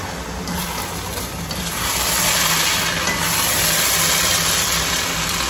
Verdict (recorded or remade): recorded